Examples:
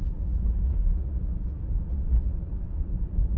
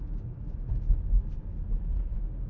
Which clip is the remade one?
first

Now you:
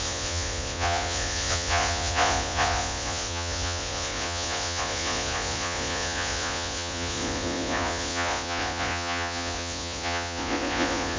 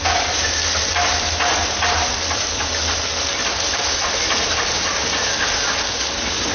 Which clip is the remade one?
first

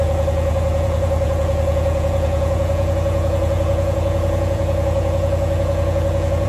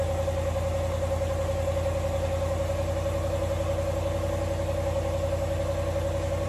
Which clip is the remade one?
first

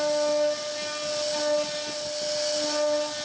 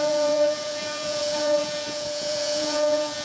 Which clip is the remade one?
second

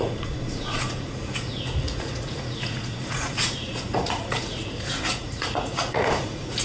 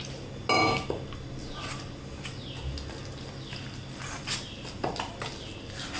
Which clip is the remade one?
first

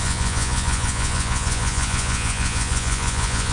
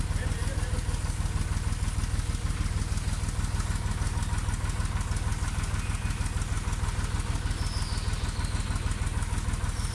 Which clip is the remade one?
first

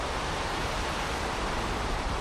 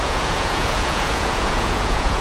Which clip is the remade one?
second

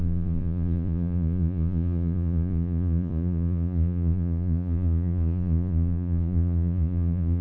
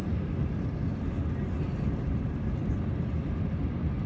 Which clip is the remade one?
first